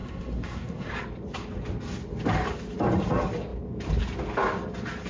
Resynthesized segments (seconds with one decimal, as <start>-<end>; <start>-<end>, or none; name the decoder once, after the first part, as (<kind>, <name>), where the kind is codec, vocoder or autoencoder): 0.0-0.9 (codec, SNAC)